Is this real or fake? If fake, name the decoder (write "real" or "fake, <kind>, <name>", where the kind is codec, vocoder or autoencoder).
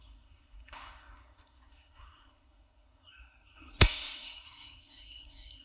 fake, codec, SNAC